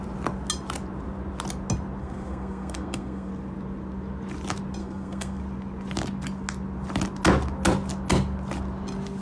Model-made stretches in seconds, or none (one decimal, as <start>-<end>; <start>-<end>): 2.0-3.3; 4.8-5.4